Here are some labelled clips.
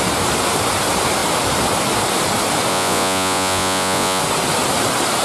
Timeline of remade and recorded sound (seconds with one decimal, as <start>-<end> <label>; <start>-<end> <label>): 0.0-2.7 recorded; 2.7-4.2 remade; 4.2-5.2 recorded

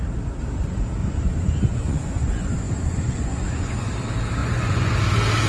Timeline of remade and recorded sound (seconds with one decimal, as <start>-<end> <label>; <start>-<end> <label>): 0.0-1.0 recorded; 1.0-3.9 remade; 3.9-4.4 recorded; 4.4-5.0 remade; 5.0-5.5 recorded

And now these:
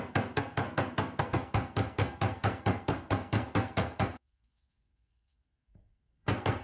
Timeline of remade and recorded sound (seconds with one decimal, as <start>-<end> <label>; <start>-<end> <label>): 0.0-6.6 remade

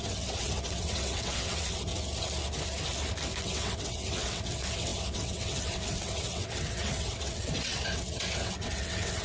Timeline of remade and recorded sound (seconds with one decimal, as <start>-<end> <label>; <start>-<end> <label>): 0.0-1.9 remade; 1.9-3.4 recorded; 3.4-9.2 remade